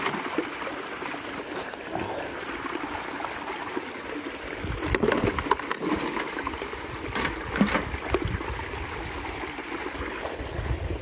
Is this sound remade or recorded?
recorded